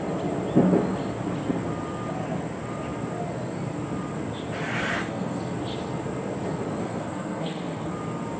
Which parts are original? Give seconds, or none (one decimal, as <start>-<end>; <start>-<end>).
0.0-4.9; 5.4-6.8; 7.9-8.4